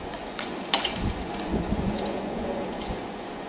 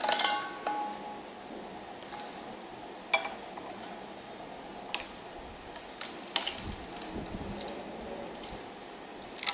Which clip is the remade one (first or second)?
first